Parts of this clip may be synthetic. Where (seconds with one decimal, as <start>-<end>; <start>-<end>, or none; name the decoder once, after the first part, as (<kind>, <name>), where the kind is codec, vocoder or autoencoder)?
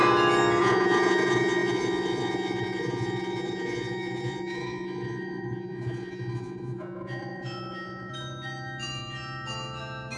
0.6-8.1 (vocoder, Vocos)